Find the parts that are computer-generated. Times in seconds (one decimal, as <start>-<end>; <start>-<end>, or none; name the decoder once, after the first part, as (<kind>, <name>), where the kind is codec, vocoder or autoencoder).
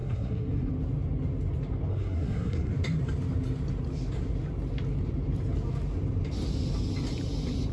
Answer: 0.0-0.7 (codec, SNAC); 1.9-2.7